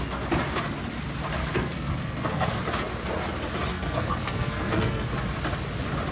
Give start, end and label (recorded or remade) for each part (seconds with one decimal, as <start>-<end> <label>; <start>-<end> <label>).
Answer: 0.0-1.4 recorded; 1.4-2.6 remade; 2.6-3.7 recorded; 3.7-5.1 remade; 5.1-6.1 recorded